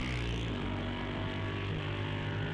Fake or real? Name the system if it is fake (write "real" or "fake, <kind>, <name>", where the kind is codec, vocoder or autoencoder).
real